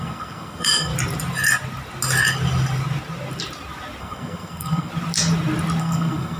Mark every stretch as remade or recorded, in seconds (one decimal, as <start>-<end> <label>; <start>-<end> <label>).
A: 0.0-0.9 remade; 0.9-4.0 recorded; 4.0-4.9 remade; 4.9-5.8 recorded; 5.8-6.4 remade